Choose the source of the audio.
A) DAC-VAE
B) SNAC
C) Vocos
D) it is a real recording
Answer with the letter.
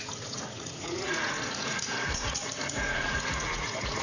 C